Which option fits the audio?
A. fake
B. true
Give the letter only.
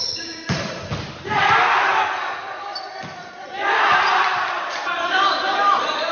B